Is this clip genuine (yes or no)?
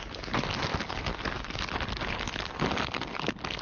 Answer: yes